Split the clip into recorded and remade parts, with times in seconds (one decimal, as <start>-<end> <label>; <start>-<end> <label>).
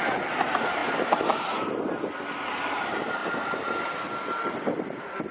0.0-5.3 recorded